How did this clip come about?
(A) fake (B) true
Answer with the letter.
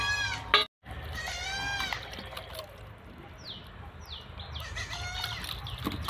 B